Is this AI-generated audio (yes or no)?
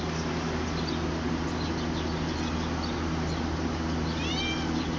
no